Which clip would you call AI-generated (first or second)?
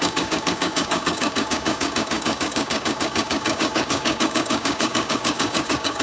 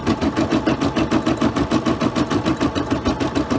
first